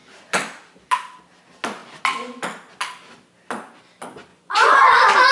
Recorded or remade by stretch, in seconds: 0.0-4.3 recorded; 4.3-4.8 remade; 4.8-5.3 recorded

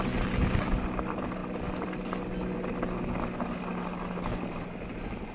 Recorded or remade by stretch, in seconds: 0.0-5.3 recorded

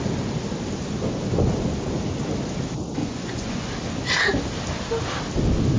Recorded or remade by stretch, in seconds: 0.0-3.0 recorded; 3.0-3.7 remade; 3.7-5.8 recorded

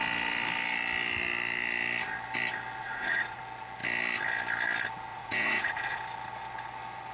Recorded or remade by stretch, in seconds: 0.0-2.8 recorded; 2.8-3.4 remade; 3.4-5.1 recorded; 5.1-6.0 remade; 6.0-7.1 recorded

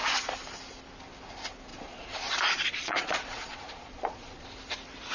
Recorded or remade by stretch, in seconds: 0.0-1.7 recorded; 1.7-4.5 remade; 4.5-5.1 recorded

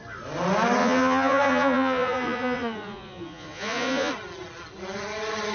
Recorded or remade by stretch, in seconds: 0.0-0.8 recorded; 0.8-4.1 remade; 4.1-5.5 recorded